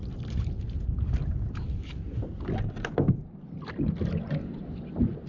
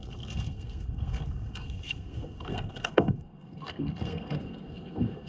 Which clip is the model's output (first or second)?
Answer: second